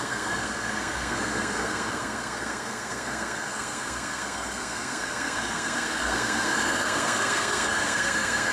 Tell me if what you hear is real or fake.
fake